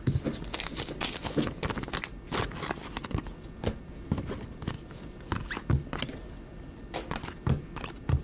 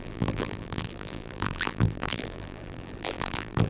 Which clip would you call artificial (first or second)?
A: second